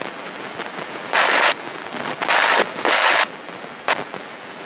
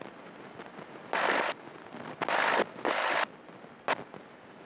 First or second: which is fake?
first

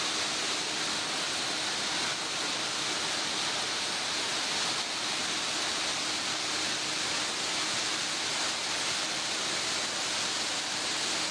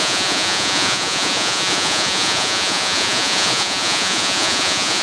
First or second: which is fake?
second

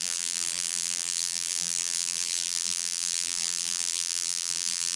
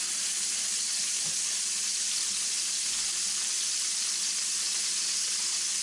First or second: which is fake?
first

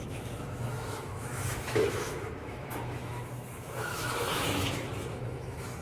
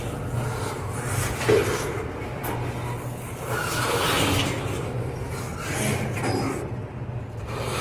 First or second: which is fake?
first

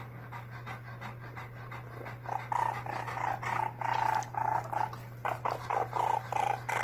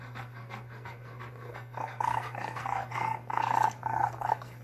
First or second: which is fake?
second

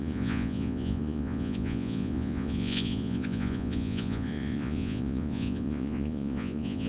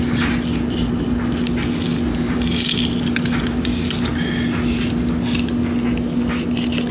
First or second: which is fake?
first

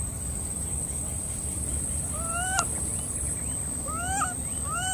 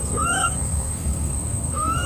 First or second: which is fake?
second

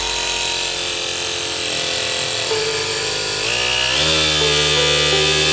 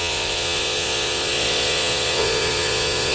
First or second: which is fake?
second